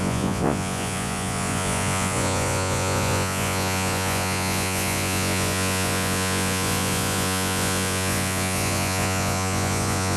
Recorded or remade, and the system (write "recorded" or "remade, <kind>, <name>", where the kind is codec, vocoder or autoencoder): remade, vocoder, Vocos